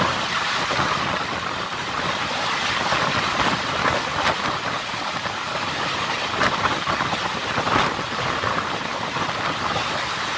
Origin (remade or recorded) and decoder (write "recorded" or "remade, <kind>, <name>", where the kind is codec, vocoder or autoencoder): recorded